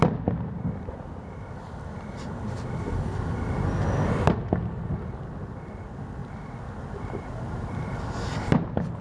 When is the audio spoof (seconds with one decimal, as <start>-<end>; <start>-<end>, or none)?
none